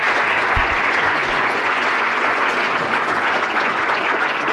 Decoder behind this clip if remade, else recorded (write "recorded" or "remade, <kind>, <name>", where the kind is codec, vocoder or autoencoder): remade, vocoder, Vocos